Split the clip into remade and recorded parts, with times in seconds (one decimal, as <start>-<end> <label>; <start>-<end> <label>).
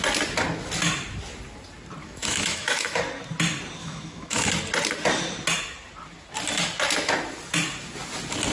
0.0-2.0 recorded; 2.0-3.0 remade; 3.0-3.8 recorded; 3.8-4.5 remade; 4.5-8.5 recorded